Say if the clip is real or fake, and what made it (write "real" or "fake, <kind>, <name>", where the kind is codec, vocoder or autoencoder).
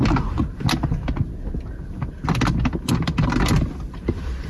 real